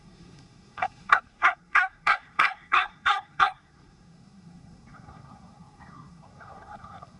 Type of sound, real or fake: fake